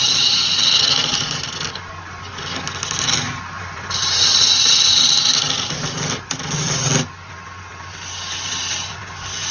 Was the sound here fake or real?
real